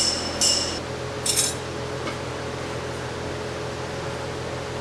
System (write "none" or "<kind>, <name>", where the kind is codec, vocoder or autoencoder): none